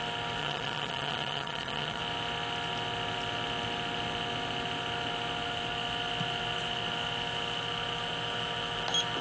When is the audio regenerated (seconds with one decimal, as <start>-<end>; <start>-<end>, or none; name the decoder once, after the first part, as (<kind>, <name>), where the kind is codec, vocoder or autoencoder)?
0.4-2.0 (vocoder, HiFi-GAN)